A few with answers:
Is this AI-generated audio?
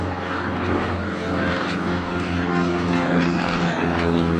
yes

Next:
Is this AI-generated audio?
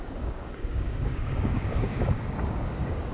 yes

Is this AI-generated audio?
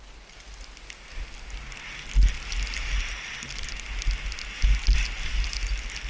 no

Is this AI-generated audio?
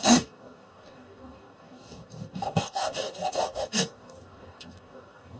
yes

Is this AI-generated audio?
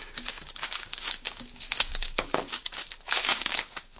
yes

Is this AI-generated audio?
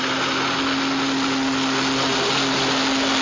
no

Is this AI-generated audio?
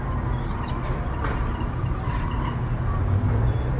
no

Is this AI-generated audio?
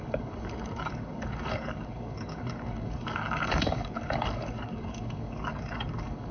yes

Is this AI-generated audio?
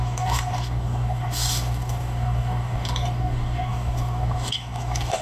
yes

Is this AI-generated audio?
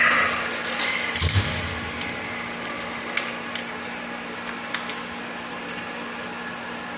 no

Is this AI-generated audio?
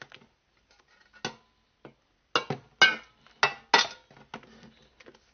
no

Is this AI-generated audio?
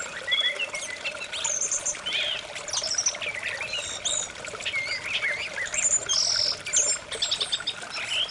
no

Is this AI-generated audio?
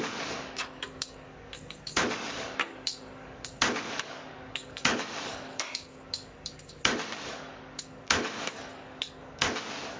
yes